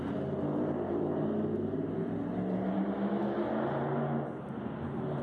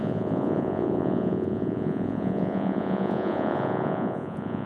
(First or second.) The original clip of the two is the first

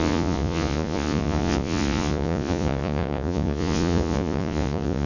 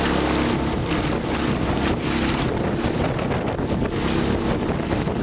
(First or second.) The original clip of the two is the second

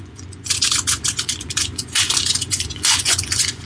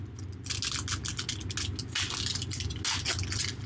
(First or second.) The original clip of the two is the second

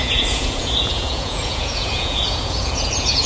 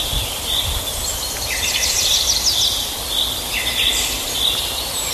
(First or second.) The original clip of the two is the second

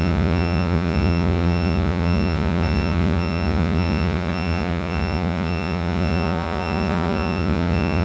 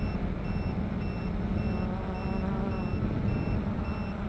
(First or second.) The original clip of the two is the second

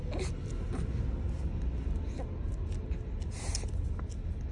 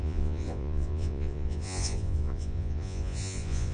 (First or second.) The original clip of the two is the first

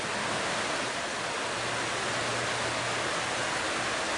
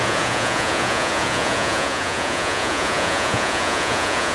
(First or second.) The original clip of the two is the first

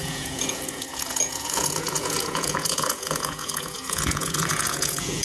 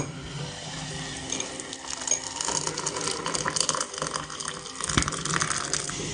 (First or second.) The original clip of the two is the second